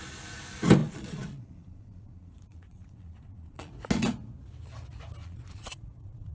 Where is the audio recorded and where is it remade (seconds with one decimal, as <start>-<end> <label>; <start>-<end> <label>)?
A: 0.0-0.8 recorded; 0.8-3.7 remade; 3.7-5.2 recorded; 5.2-6.3 remade